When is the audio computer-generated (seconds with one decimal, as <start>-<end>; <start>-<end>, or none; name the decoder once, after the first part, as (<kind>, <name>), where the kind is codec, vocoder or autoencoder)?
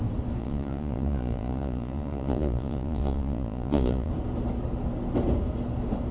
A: 0.4-4.1 (vocoder, Vocos)